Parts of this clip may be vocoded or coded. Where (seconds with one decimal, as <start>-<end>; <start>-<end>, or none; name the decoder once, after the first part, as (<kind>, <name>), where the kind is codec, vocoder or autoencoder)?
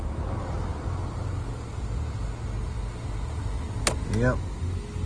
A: none